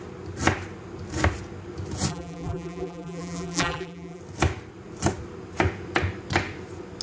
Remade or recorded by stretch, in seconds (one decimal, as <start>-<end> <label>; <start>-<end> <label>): 0.0-2.1 recorded; 2.1-4.2 remade; 4.2-7.0 recorded